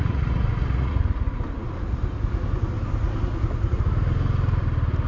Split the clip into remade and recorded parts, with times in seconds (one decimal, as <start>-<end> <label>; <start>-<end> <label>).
0.0-1.0 remade; 1.0-5.1 recorded